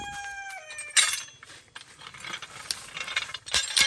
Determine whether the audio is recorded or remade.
recorded